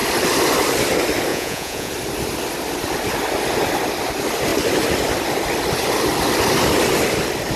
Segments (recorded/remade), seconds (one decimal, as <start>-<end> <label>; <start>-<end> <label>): 0.0-1.3 recorded; 1.3-1.9 remade; 1.9-7.6 recorded